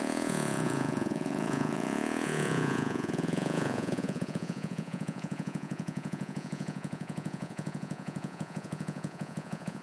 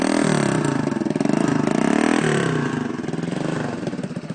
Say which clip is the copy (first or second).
first